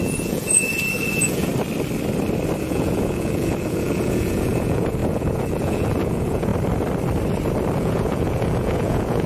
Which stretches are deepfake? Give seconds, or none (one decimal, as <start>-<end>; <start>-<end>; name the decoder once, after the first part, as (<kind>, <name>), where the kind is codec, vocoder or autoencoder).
0.0-1.5 (vocoder, Vocos); 2.6-6.5; 7.8-9.3